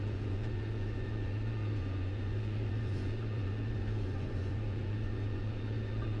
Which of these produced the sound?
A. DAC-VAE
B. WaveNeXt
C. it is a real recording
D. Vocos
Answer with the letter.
D